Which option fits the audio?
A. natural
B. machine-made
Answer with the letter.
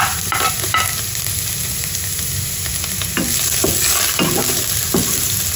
A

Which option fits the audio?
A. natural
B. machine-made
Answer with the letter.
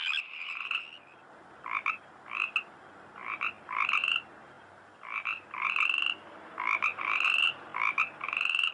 A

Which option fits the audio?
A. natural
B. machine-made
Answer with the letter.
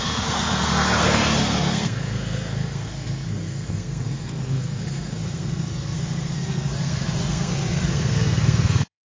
B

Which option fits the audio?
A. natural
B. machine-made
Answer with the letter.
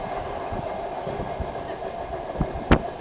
A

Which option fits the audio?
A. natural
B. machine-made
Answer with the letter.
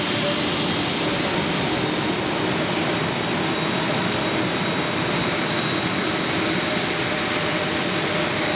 A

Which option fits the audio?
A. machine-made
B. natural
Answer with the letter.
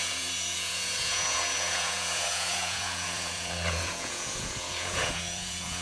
A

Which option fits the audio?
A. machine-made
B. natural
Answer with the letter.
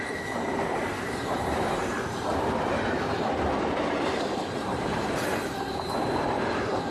A